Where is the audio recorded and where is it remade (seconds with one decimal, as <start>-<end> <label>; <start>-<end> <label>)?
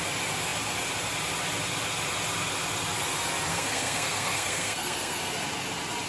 0.0-3.5 recorded; 3.5-5.2 remade; 5.2-6.1 recorded